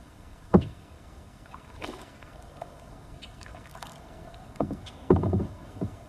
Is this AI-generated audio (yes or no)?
yes